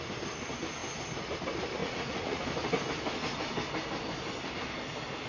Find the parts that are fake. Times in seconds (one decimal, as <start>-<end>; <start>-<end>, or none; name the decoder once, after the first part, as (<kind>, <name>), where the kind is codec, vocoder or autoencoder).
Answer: 1.8-2.4 (vocoder, Vocos)